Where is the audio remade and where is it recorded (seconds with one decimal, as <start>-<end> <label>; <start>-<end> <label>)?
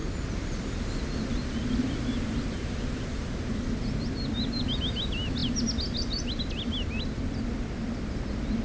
0.0-8.6 recorded